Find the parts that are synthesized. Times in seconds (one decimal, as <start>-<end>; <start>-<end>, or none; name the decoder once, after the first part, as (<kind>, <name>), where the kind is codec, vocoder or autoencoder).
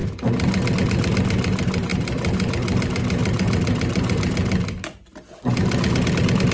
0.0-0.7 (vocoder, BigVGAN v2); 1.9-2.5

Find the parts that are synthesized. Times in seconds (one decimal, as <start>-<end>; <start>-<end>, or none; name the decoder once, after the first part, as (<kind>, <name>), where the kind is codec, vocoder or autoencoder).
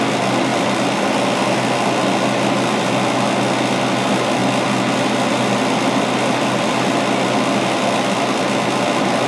none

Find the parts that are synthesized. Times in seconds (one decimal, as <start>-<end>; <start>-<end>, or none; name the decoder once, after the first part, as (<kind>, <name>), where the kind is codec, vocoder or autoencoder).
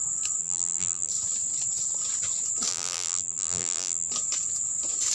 0.4-1.1 (vocoder, BigVGAN v2); 2.7-4.1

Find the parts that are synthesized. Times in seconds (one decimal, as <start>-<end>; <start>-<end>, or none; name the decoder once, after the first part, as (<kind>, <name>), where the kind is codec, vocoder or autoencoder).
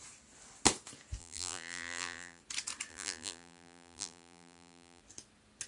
1.2-2.4 (vocoder, BigVGAN v2); 2.9-5.0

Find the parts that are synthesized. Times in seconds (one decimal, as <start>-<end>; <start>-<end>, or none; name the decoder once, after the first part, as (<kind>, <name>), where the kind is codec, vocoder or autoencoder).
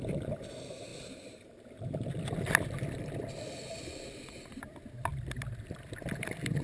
0.0-6.6 (vocoder, BigVGAN v2)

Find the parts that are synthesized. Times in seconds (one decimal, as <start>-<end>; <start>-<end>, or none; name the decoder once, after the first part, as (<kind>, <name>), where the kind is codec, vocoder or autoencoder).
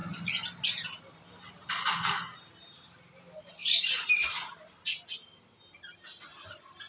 3.6-4.8 (vocoder, BigVGAN v2)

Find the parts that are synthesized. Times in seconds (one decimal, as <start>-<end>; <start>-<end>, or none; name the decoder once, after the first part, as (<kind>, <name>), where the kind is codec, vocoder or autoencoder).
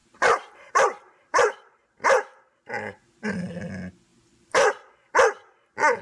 0.0-3.3 (vocoder, BigVGAN v2); 4.1-4.9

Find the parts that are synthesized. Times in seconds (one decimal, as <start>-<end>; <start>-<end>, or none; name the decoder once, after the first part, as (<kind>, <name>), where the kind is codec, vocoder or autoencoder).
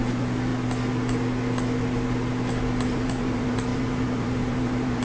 0.0-0.5 (vocoder, BigVGAN v2); 2.8-5.0